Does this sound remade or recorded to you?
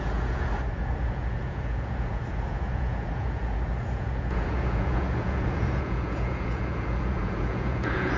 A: remade